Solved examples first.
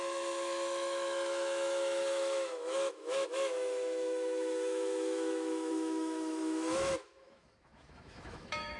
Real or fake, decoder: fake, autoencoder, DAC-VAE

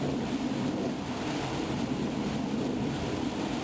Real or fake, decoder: real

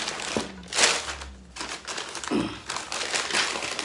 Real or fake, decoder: real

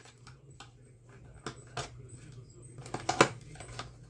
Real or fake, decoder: real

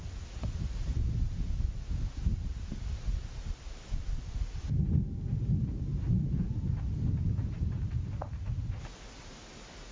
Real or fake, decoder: real